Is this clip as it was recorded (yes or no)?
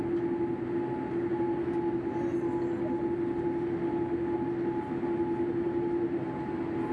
yes